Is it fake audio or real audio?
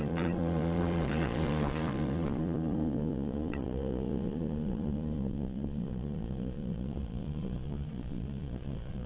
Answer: fake